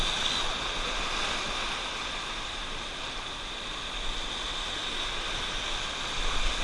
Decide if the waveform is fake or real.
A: real